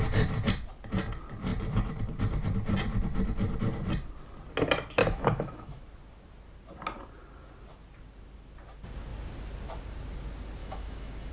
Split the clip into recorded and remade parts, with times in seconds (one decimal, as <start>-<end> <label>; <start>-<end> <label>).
0.0-5.0 recorded; 5.0-5.8 remade; 5.8-10.6 recorded; 10.6-11.3 remade